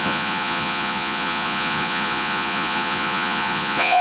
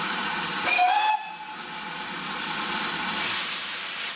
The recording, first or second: second